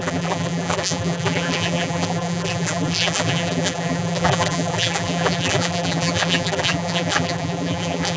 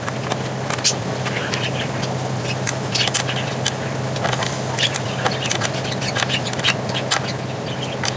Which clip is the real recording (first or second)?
second